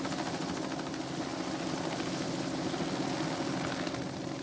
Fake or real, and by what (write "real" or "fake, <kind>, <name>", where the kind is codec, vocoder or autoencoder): real